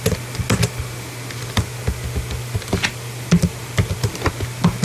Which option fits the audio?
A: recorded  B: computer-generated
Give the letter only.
A